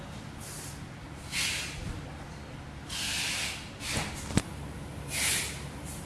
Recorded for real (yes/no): yes